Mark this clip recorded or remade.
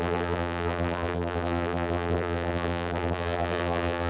remade